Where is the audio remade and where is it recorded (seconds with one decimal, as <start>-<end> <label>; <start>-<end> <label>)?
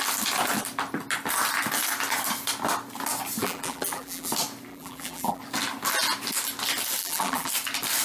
0.0-3.4 recorded; 3.4-4.3 remade; 4.3-4.7 recorded; 4.7-5.4 remade; 5.4-7.0 recorded; 7.0-7.5 remade; 7.5-8.0 recorded